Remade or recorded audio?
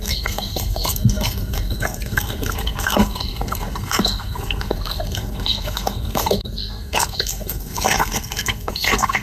remade